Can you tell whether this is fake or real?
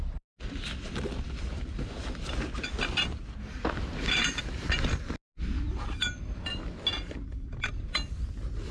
real